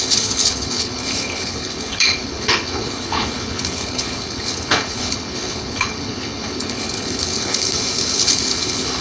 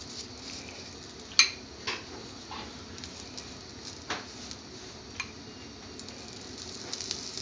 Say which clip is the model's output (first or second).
first